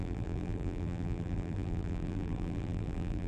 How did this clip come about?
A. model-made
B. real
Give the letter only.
A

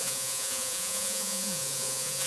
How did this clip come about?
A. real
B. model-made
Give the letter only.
B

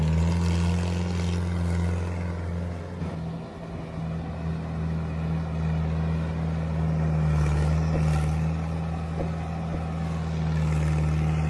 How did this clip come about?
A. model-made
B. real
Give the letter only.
B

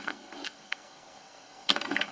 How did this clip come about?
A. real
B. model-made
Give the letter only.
B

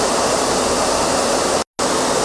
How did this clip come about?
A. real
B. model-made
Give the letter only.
A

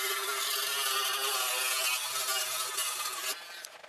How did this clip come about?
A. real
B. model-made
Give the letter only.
A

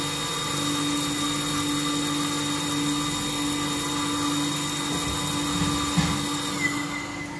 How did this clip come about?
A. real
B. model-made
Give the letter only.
A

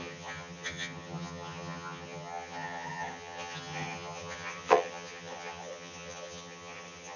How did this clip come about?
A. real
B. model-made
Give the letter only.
B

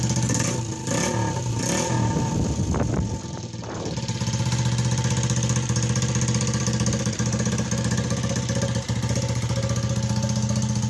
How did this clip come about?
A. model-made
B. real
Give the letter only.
B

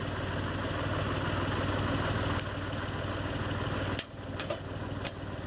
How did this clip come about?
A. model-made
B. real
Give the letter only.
B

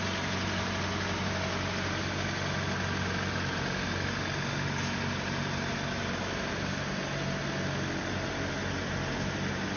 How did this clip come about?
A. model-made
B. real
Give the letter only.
B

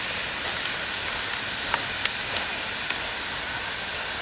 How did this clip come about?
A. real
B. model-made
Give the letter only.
A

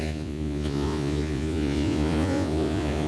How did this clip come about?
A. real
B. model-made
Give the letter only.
B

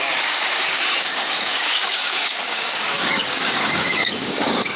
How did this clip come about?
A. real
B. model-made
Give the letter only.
B